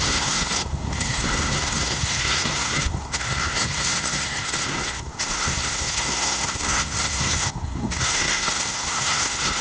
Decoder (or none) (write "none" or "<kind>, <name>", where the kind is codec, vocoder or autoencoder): codec, SNAC